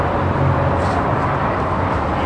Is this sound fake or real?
real